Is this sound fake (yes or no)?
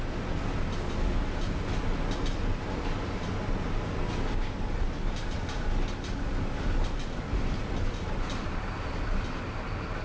no